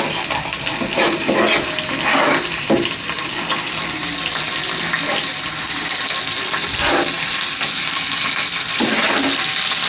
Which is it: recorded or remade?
recorded